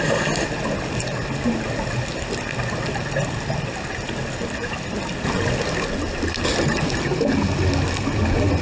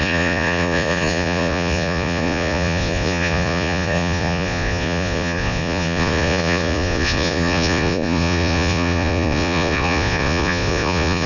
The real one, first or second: first